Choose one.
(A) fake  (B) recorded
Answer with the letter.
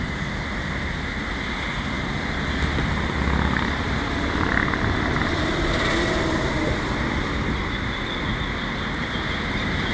B